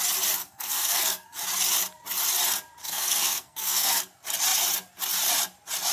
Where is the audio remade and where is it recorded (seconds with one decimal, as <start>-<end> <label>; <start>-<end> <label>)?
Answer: 0.0-0.4 recorded; 0.4-1.4 remade; 1.4-2.8 recorded; 2.8-4.0 remade; 4.0-5.9 recorded